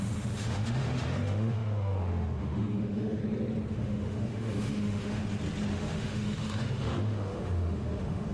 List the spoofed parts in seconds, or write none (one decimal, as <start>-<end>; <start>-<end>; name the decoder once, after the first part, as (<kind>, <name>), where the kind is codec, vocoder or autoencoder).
0.0-3.2 (autoencoder, DAC-VAE); 3.7-5.2; 5.7-8.3

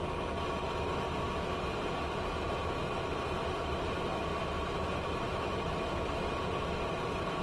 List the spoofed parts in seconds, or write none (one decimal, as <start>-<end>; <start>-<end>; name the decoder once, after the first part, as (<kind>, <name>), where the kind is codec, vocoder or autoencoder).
none

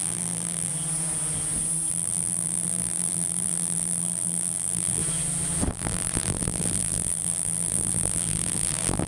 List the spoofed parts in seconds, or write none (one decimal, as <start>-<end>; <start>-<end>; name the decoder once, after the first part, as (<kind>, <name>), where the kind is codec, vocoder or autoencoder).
0.0-0.7 (vocoder, BigVGAN v2); 1.9-5.0; 5.7-9.1

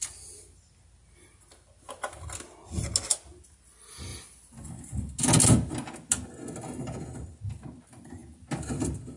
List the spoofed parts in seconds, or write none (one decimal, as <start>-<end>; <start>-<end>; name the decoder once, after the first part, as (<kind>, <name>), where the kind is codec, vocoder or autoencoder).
none

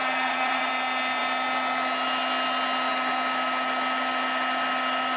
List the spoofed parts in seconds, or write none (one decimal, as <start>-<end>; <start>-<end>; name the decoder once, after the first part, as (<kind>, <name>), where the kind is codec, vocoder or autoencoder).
0.0-0.7 (vocoder, Vocos)